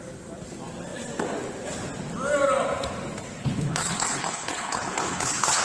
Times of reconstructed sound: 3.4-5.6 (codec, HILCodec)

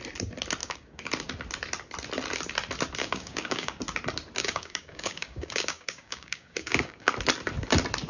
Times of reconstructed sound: 0.6-1.1 (codec, DAC); 3.0-3.8; 4.4-7.1

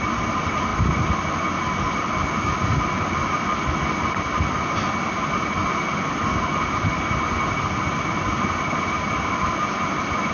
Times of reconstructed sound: none

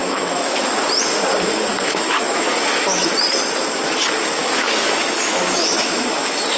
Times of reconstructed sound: 0.0-0.6 (autoencoder, DAC-VAE); 1.7-3.0; 4.4-6.0

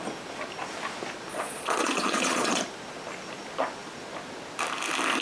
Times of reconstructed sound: 1.3-2.6 (vocoder, Vocos)

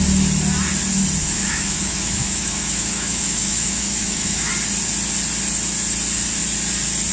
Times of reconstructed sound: 1.2-4.5 (autoencoder, DAC-VAE)